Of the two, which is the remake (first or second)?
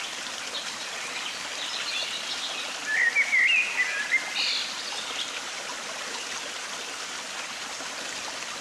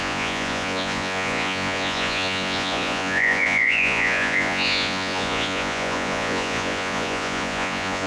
second